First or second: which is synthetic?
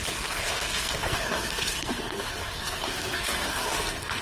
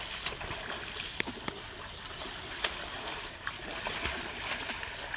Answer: first